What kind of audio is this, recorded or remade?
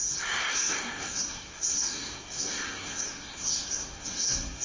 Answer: remade